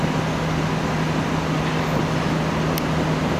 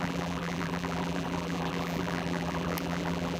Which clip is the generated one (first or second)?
second